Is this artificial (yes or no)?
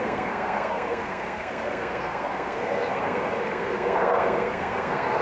yes